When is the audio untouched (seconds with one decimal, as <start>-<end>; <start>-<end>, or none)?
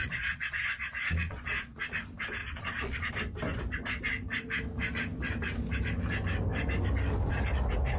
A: 1.8-2.4; 3.1-8.0